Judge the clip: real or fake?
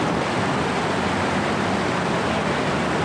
real